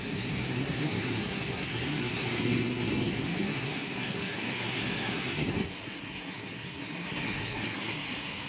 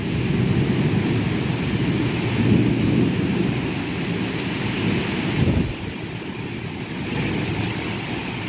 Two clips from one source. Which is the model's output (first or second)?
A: first